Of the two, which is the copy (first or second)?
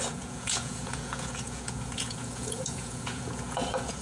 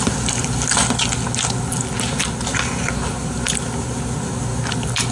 first